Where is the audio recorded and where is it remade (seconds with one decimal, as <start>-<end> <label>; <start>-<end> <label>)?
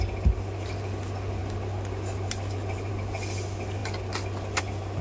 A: 0.0-5.0 recorded